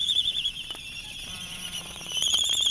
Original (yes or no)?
no